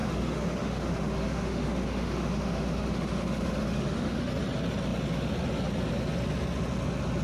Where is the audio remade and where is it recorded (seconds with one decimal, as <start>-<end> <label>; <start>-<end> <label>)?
0.0-4.3 remade; 4.3-7.2 recorded